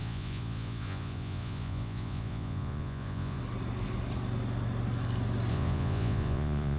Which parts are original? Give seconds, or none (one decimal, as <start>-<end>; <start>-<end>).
3.4-5.5